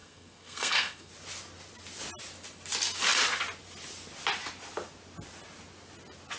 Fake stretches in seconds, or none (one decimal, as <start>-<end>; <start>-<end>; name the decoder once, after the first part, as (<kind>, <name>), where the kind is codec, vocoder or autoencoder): 0.0-1.1 (codec, SNAC)